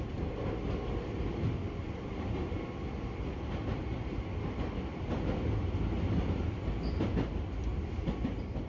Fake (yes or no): no